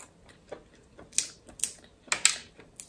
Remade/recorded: recorded